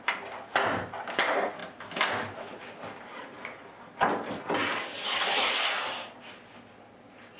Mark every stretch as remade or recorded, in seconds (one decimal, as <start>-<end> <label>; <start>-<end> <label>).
0.0-7.4 recorded